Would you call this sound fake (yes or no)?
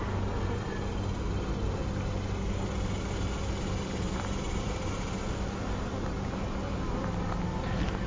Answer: no